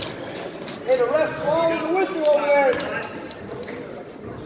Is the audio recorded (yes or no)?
yes